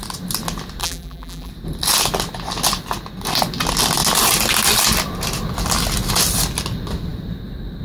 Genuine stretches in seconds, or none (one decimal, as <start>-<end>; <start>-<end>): 0.0-0.8; 1.5-7.8